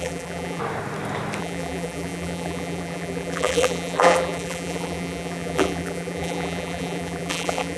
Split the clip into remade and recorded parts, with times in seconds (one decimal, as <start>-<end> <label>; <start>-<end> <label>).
0.0-0.6 remade; 0.6-1.4 recorded; 1.4-7.8 remade